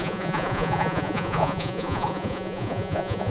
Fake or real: fake